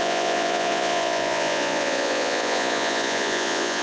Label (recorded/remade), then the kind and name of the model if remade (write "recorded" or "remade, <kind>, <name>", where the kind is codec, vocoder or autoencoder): remade, vocoder, Vocos